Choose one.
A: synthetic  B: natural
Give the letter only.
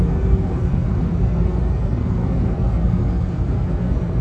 A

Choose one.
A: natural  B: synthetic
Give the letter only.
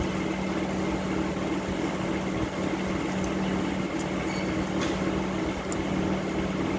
A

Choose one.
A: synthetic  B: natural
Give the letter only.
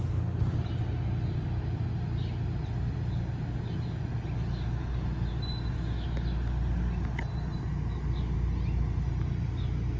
B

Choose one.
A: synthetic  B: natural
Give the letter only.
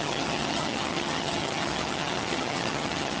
A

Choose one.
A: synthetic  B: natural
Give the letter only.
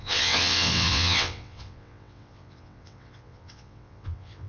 A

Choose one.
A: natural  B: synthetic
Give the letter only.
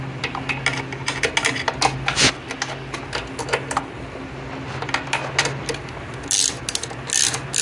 A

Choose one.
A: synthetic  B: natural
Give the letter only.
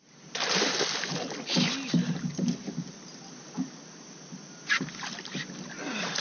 B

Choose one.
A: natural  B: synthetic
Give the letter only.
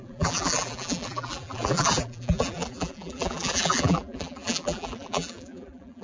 B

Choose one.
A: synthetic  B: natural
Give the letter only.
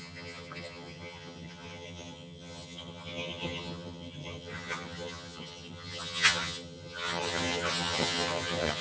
A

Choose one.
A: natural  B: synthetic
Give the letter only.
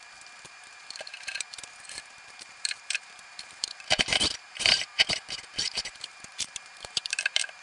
B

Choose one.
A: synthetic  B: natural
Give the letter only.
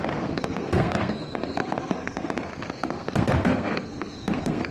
A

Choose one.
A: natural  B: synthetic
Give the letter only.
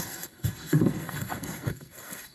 B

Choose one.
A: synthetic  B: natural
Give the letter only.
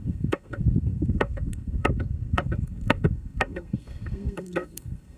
A